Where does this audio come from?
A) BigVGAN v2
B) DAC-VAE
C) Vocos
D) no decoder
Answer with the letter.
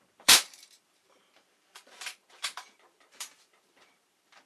A